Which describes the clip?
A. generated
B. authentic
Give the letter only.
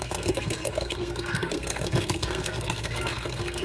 A